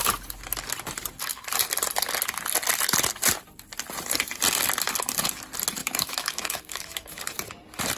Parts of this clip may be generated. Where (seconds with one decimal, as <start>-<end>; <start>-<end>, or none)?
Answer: 5.8-7.2

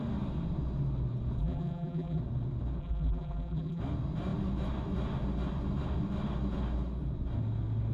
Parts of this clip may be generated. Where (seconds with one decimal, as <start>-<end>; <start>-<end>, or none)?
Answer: 1.4-2.2; 2.8-3.8

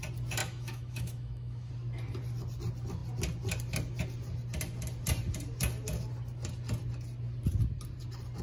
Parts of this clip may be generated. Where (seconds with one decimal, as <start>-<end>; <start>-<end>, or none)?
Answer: 0.4-1.7